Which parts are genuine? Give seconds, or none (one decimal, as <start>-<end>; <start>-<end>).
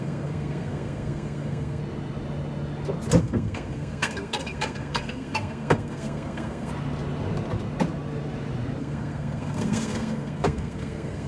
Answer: 1.8-3.2; 6.7-8.8